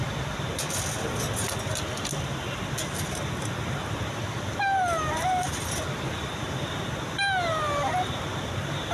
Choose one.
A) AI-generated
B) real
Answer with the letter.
B